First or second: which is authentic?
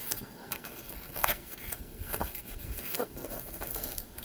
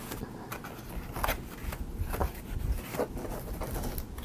second